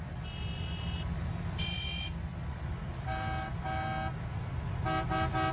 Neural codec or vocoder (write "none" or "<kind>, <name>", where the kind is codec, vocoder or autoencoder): none